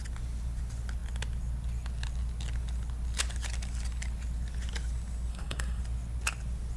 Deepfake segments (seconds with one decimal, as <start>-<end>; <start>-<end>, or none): 5.3-5.8